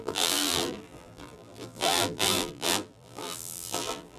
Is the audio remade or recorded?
remade